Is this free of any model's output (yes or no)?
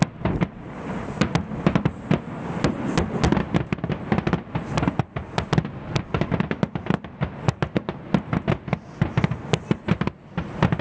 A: yes